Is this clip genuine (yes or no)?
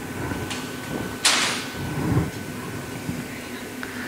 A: yes